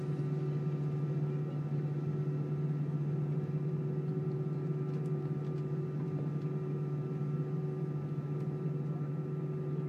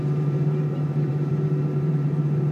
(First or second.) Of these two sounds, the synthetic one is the second